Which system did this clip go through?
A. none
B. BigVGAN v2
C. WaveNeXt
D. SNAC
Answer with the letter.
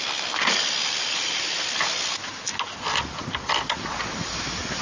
A